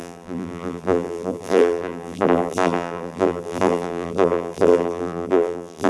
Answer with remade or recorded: remade